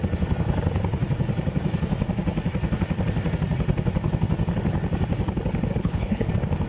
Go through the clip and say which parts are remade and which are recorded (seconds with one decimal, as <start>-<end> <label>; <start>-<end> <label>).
0.0-5.7 recorded; 5.7-6.3 remade; 6.3-6.7 recorded